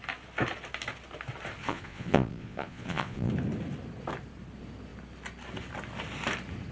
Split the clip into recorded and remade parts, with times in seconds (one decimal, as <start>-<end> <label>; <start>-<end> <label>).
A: 0.0-1.6 recorded; 1.6-3.3 remade; 3.3-6.7 recorded